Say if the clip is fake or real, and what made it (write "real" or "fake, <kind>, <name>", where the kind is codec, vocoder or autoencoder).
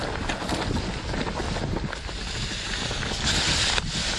real